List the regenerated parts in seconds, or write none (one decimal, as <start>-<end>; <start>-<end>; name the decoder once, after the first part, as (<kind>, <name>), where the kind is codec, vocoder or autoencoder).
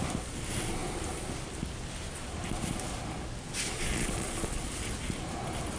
3.9-4.7 (vocoder, Vocos)